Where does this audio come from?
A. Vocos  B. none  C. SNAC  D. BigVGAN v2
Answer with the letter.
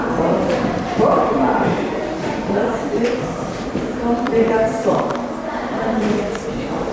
D